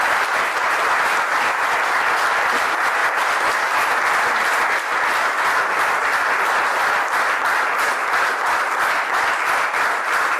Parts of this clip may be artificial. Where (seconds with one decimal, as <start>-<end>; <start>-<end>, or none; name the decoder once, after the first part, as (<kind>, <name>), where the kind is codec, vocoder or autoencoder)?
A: none